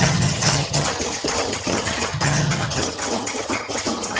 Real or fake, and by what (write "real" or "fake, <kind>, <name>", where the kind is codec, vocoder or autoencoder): fake, vocoder, HiFi-GAN